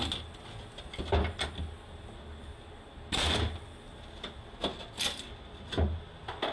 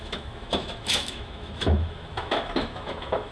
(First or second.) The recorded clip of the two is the first